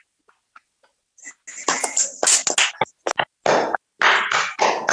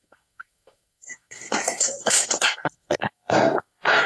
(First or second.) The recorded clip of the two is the first